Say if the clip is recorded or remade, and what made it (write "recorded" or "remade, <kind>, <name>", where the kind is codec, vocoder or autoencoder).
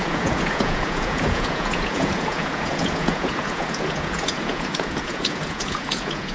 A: remade, vocoder, Vocos